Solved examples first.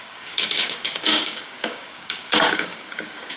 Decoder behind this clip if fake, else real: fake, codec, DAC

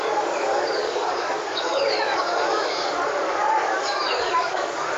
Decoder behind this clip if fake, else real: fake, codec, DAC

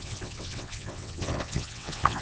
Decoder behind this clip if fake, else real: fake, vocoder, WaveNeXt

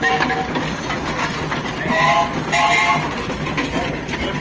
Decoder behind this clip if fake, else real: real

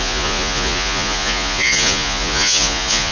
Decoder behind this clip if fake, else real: fake, vocoder, Vocos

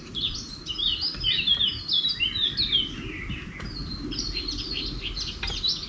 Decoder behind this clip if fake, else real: real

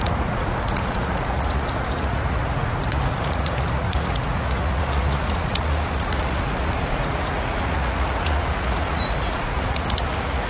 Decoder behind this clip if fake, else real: fake, vocoder, Vocos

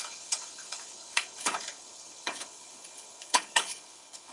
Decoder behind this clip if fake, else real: fake, codec, HILCodec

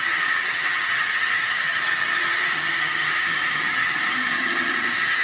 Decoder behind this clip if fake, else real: fake, vocoder, HiFi-GAN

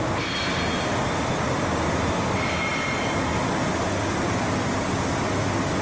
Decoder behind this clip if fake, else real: real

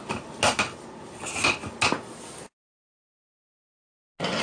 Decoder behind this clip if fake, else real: real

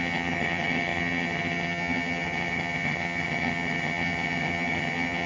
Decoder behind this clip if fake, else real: fake, vocoder, HiFi-GAN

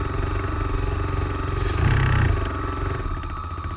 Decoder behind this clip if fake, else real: real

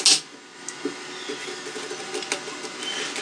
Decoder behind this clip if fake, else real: real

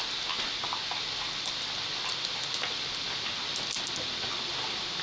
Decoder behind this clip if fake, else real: real